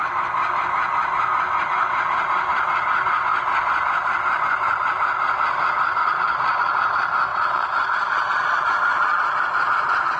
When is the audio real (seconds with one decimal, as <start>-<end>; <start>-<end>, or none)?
0.0-6.0; 6.7-7.3